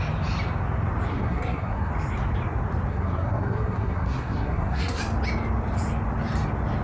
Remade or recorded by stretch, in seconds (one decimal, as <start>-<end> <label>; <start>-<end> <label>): 0.0-1.1 recorded; 1.1-1.9 remade; 1.9-2.9 recorded; 2.9-5.0 remade; 5.0-6.8 recorded